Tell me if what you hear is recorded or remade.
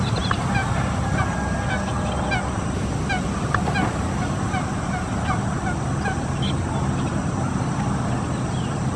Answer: recorded